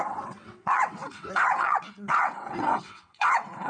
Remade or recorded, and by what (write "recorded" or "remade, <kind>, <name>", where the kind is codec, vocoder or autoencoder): remade, vocoder, WaveNeXt